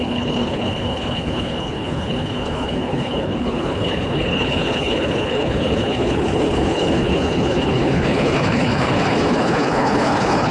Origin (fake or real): fake